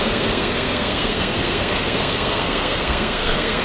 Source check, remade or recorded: remade